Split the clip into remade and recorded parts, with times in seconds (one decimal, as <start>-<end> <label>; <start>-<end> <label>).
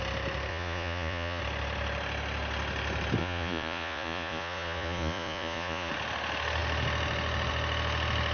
0.0-0.5 recorded; 0.5-1.4 remade; 1.4-3.2 recorded; 3.2-5.9 remade; 5.9-8.3 recorded